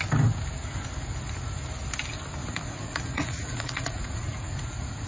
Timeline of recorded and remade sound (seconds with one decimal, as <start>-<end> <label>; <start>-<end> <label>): 0.0-2.4 recorded; 2.4-5.1 remade